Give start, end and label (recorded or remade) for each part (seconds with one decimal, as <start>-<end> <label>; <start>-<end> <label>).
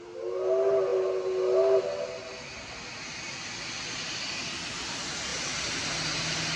0.0-6.6 recorded